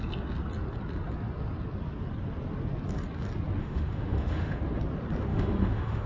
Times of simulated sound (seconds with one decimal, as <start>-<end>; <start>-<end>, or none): 3.6-4.6; 5.3-6.1